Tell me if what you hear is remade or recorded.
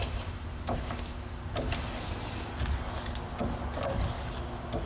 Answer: recorded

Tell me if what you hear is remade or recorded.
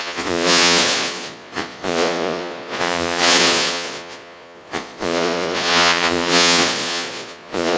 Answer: remade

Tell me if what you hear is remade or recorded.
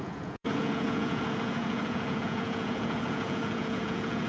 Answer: remade